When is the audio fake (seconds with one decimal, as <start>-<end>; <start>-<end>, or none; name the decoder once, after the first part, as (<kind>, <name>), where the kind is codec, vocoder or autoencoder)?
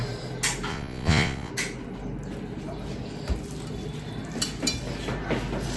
0.7-1.5 (vocoder, Vocos)